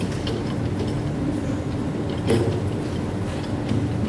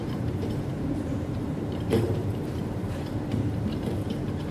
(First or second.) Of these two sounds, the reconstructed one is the second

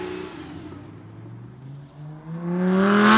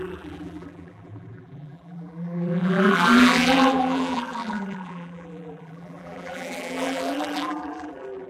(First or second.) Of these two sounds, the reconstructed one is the second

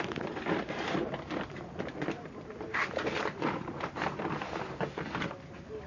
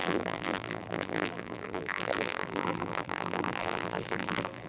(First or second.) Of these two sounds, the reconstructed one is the second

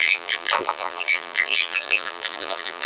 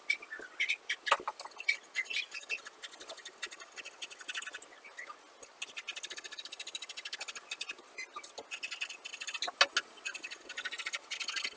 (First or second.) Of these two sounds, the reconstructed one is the first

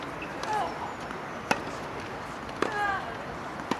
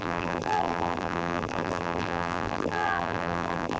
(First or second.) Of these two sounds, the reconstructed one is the second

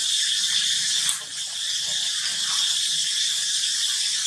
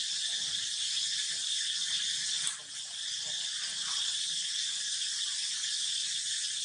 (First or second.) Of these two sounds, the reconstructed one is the first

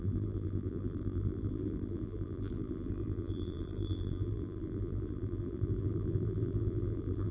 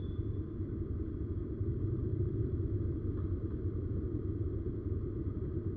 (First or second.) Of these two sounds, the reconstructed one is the first